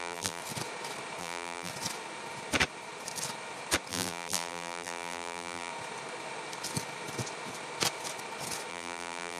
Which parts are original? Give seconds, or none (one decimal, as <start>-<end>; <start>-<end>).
0.4-1.2; 1.7-3.9; 5.7-8.7